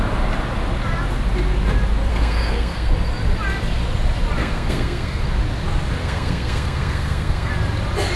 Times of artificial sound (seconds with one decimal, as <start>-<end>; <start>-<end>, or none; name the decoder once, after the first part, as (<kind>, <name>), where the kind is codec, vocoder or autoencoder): 2.1-2.9 (codec, SNAC); 4.4-5.2; 6.0-7.5